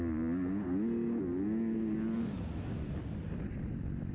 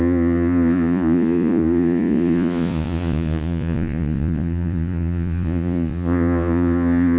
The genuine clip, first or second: first